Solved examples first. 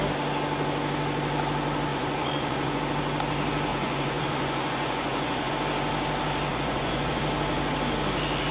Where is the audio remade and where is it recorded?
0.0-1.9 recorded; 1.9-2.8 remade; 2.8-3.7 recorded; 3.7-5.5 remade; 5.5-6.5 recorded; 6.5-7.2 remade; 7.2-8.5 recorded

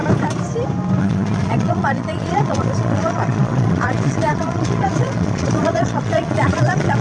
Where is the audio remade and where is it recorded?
0.0-1.0 recorded; 1.0-7.0 remade

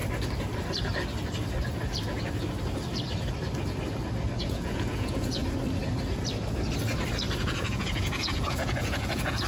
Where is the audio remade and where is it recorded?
0.0-4.4 recorded; 4.4-5.4 remade; 5.4-7.4 recorded; 7.4-9.5 remade

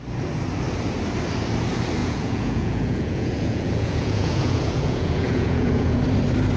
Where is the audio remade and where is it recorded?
0.0-2.0 recorded; 2.0-6.0 remade; 6.0-6.6 recorded

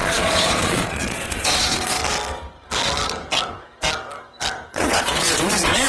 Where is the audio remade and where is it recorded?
0.0-2.0 remade; 2.0-4.7 recorded; 4.7-5.9 remade

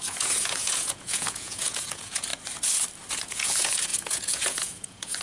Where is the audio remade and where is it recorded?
0.0-2.3 remade; 2.3-3.1 recorded; 3.1-5.2 remade

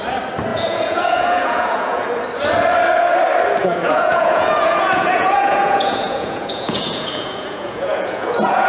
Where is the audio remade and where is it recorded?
0.0-0.5 recorded; 0.5-2.2 remade; 2.2-3.6 recorded; 3.6-8.7 remade

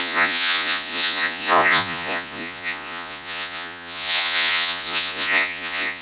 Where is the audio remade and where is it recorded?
0.0-6.0 remade